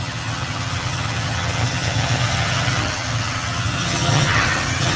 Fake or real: fake